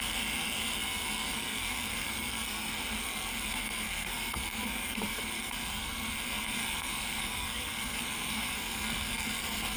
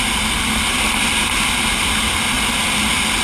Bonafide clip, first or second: second